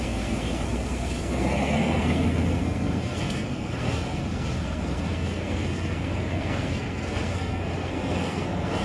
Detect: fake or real fake